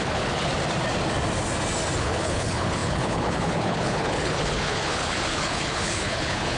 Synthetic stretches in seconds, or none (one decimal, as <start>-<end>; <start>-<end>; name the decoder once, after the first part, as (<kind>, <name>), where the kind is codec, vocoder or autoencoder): 0.0-0.5 (codec, HILCodec); 2.0-6.6